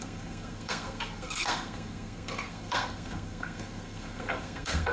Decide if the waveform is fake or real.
fake